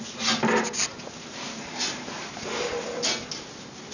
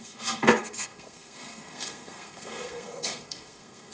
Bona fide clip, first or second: first